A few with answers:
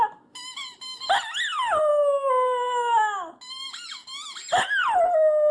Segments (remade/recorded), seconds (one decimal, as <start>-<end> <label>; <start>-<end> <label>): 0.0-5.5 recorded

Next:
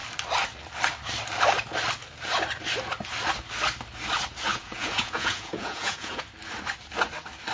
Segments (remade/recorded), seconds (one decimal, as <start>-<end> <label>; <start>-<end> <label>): 0.0-4.5 recorded; 4.5-6.2 remade; 6.2-7.5 recorded

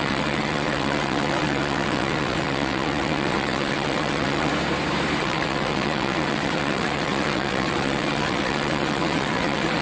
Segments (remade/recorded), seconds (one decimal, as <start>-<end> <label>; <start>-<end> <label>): 0.0-4.5 remade; 4.5-5.2 recorded; 5.2-9.8 remade

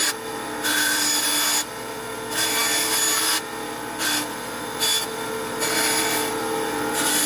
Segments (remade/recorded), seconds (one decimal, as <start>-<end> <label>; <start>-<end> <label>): 0.0-7.3 recorded

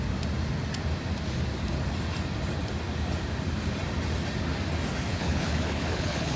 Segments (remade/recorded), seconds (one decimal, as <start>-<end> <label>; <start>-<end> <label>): 0.0-5.1 recorded; 5.1-6.4 remade